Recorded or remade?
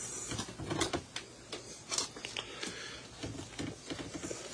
recorded